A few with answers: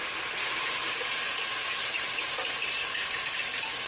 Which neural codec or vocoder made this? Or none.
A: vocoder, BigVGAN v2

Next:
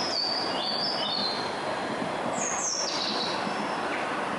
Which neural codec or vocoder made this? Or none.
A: none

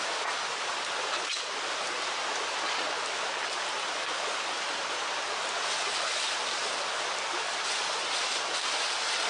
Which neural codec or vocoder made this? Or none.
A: none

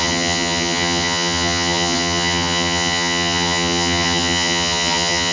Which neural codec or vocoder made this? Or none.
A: vocoder, HiFi-GAN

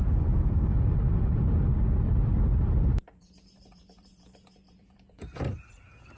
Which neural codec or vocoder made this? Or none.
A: vocoder, BigVGAN v2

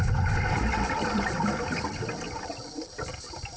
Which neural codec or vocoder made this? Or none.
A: none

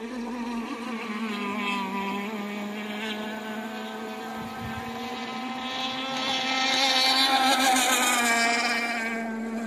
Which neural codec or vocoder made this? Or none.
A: none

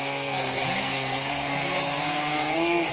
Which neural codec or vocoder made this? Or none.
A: codec, SNAC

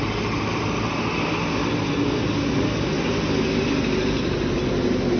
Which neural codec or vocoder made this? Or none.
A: none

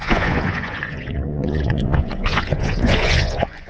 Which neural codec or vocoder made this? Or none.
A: vocoder, Vocos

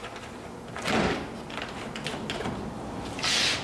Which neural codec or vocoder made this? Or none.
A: none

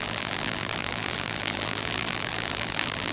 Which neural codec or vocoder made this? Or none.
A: vocoder, BigVGAN v2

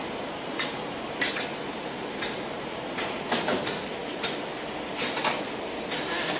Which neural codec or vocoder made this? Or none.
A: vocoder, BigVGAN v2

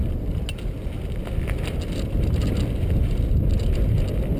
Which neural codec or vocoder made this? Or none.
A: none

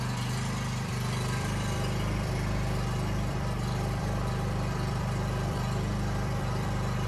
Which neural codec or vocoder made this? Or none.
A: vocoder, BigVGAN v2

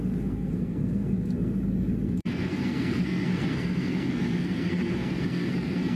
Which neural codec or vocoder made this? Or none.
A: codec, SNAC